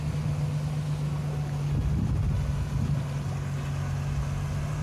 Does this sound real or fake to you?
real